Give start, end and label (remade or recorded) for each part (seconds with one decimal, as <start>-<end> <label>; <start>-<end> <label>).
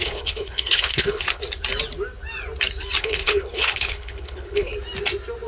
0.0-1.4 remade; 1.4-3.0 recorded; 3.0-4.7 remade; 4.7-5.5 recorded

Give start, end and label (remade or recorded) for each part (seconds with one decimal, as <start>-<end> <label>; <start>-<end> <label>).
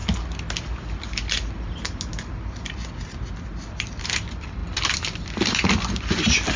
0.0-4.0 recorded; 4.0-6.6 remade